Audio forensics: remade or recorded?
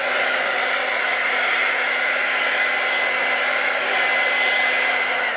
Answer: recorded